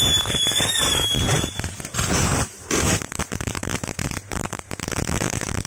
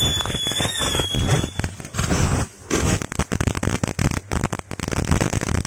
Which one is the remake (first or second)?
first